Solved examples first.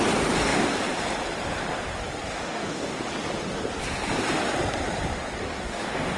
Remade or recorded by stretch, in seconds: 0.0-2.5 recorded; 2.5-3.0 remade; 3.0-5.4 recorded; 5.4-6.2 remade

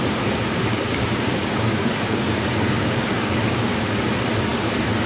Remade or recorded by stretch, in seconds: 0.0-0.7 recorded; 0.7-3.8 remade; 3.8-5.1 recorded

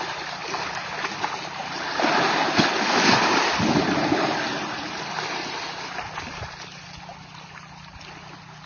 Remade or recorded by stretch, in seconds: 0.0-8.7 recorded

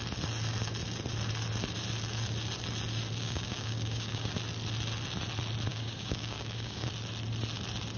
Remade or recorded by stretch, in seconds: 0.0-3.2 recorded; 3.2-4.3 remade; 4.3-5.7 recorded; 5.7-6.9 remade; 6.9-8.0 recorded

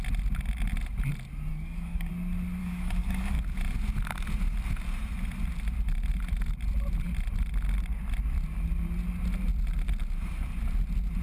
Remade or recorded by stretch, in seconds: 0.0-1.5 recorded; 1.5-2.1 remade; 2.1-2.6 recorded; 2.6-3.4 remade; 3.4-11.2 recorded

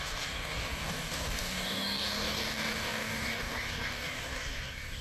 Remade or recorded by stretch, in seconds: 0.0-5.0 remade